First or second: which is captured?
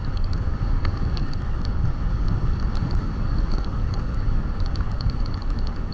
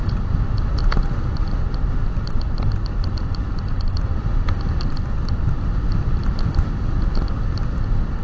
second